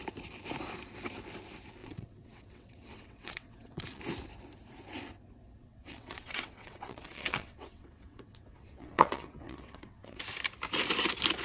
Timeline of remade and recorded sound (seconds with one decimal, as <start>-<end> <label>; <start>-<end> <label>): 0.0-1.8 recorded; 1.8-4.0 remade; 4.0-5.6 recorded; 5.6-10.2 remade; 10.2-11.4 recorded